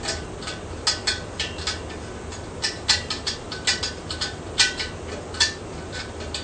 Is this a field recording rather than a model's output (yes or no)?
yes